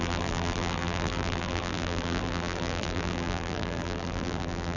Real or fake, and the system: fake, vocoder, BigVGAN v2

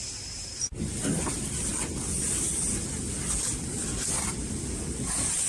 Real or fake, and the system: real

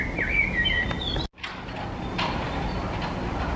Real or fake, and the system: real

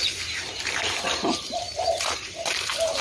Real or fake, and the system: fake, vocoder, BigVGAN v2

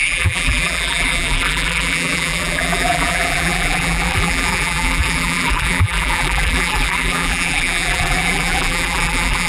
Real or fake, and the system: fake, vocoder, BigVGAN v2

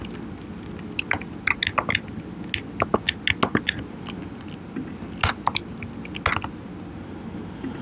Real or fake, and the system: real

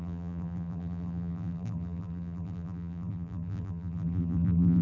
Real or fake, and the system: fake, vocoder, BigVGAN v2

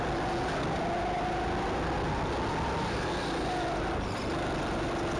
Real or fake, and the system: real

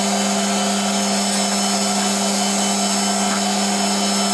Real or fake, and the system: real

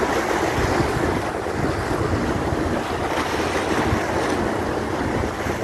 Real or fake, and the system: real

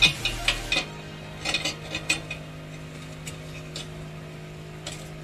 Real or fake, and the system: real